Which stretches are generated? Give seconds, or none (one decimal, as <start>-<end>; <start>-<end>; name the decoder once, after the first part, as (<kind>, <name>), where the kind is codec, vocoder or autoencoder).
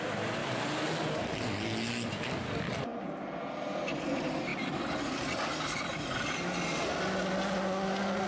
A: 0.4-0.9 (vocoder, BigVGAN v2)